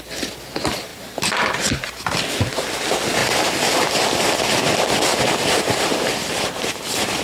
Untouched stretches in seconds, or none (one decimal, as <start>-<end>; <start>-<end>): 0.0-0.9; 1.5-3.2; 3.9-5.1